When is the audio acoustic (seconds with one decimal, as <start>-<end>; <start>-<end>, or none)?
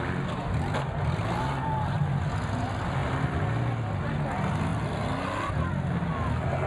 0.0-1.2; 2.2-6.7